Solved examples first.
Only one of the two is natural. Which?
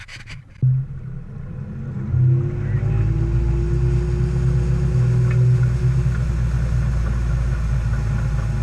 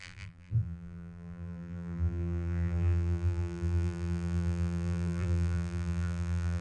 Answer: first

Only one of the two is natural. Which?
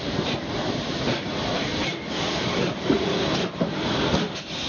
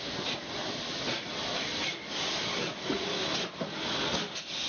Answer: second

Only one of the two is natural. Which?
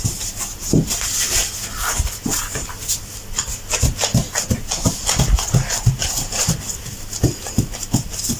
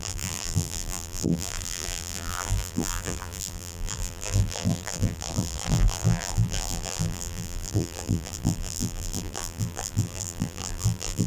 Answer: first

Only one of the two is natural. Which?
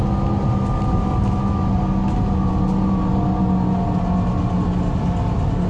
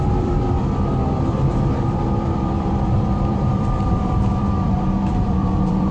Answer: first